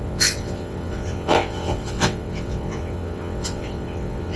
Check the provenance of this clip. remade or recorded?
remade